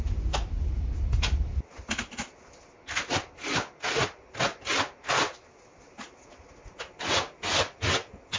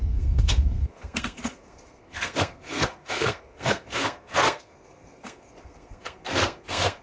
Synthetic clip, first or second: second